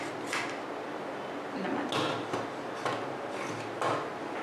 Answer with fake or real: real